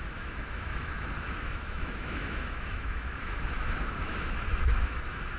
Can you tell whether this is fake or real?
fake